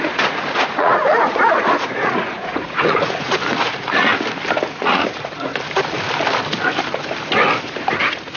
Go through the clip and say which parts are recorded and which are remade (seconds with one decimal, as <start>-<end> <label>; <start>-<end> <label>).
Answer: 0.0-4.1 remade; 4.1-4.8 recorded; 4.8-5.5 remade; 5.5-8.0 recorded; 8.0-8.4 remade